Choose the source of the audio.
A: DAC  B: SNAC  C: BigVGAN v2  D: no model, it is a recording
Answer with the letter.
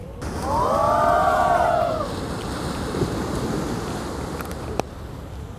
D